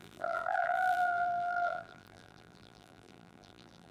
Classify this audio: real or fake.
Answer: fake